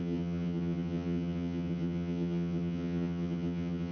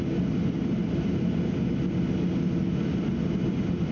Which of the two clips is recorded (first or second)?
second